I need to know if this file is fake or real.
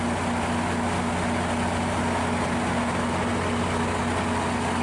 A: real